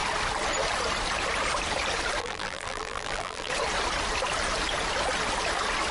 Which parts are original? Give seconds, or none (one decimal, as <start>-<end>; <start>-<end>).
0.0-2.2; 3.5-5.9